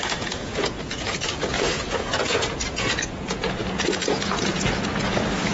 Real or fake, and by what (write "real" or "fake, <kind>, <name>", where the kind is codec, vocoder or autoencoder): fake, vocoder, Vocos